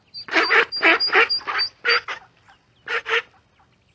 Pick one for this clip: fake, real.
real